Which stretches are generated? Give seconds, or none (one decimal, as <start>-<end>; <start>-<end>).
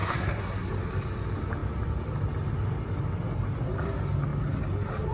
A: 0.0-0.7